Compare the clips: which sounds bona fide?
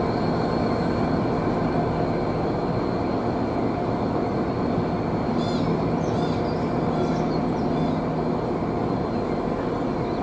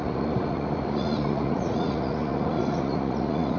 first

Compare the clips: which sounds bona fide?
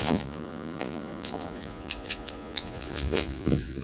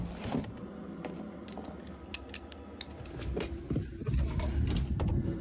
second